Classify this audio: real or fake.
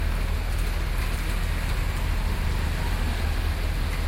real